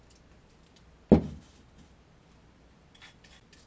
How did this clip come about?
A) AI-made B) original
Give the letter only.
B